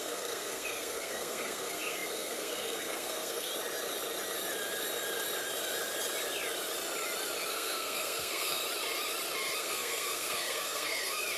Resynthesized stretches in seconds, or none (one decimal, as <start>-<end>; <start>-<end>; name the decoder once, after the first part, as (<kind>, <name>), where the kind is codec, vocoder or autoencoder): 0.0-3.5 (codec, SNAC); 7.5-8.6; 9.6-11.4